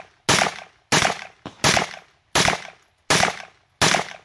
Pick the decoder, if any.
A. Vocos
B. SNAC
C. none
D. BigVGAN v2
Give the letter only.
C